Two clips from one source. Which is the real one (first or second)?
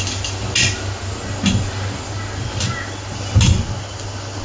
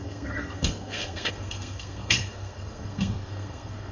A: first